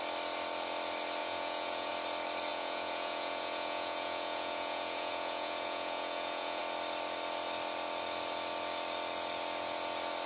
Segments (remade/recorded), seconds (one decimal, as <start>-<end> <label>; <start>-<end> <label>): 0.0-1.2 recorded; 1.2-1.9 remade; 1.9-2.5 recorded; 2.5-6.6 remade; 6.6-10.3 recorded